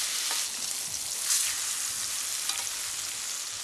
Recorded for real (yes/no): yes